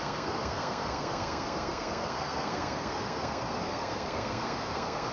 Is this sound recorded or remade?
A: remade